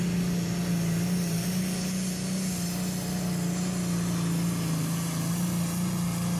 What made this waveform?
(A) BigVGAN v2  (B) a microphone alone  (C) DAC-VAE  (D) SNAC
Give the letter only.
B